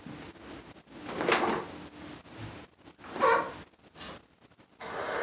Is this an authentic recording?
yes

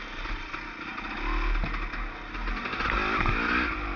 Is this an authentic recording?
yes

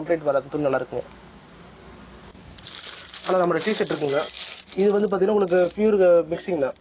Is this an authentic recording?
yes